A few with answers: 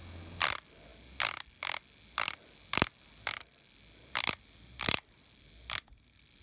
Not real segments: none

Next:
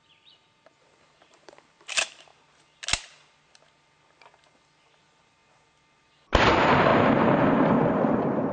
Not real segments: 0.0-2.3; 5.0-5.4; 6.5-6.9

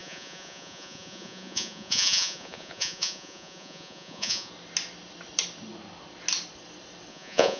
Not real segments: 0.0-4.5; 7.1-7.6

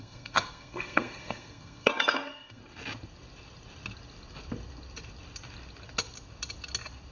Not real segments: 0.0-2.6

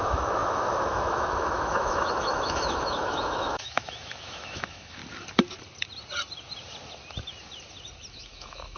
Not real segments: 0.0-5.0; 8.1-8.8

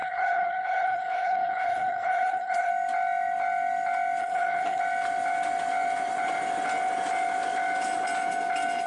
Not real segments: 0.0-2.7; 4.2-4.8

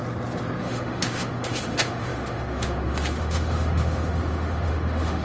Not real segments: 0.6-5.2